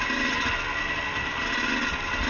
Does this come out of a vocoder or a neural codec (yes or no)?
no